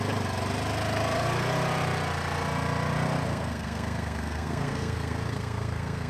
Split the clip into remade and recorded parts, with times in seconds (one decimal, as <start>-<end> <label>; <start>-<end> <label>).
0.0-3.3 recorded; 3.3-6.1 remade